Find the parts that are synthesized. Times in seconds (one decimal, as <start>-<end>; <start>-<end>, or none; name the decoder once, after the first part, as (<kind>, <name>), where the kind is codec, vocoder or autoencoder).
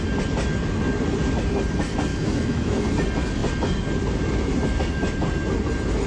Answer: 2.1-2.8 (autoencoder, DAC-VAE)